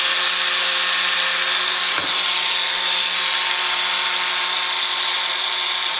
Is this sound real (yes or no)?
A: yes